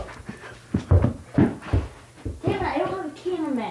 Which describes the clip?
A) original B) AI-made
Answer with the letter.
A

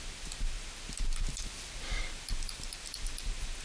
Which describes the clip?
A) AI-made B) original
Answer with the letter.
B